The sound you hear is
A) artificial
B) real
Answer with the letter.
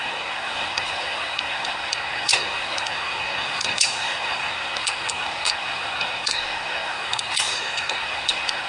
A